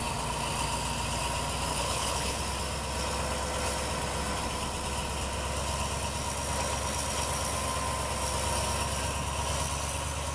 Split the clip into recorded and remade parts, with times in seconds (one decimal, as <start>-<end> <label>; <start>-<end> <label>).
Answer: 0.0-1.7 recorded; 1.7-2.4 remade; 2.4-10.3 recorded